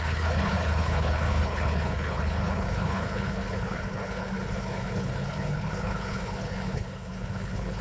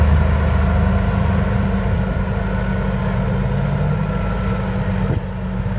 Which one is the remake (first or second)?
first